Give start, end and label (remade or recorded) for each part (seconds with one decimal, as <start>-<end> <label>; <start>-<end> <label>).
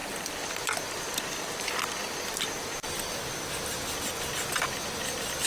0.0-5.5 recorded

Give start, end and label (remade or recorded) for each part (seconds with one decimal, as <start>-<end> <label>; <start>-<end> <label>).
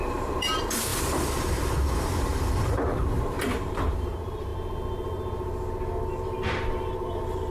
0.0-0.9 remade; 0.9-2.0 recorded; 2.0-4.5 remade; 4.5-6.1 recorded; 6.1-7.5 remade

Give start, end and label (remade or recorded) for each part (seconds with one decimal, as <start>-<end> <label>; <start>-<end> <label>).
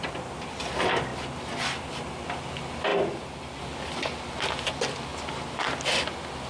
0.0-6.5 recorded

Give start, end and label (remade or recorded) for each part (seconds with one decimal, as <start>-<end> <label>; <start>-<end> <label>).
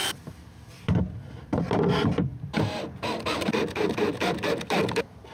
0.0-5.3 remade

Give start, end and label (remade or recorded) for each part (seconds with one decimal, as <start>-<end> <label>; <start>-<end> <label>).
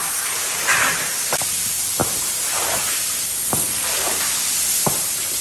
0.0-5.4 recorded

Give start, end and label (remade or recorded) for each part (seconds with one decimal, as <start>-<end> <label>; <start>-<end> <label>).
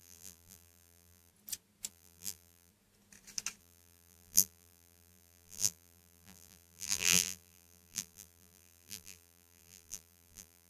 0.0-1.3 remade; 1.3-1.9 recorded; 1.9-2.7 remade; 2.7-3.6 recorded; 3.6-10.7 remade